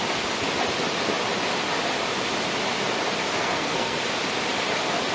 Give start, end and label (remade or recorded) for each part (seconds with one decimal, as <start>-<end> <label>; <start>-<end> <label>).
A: 0.0-3.4 recorded; 3.4-4.0 remade; 4.0-5.1 recorded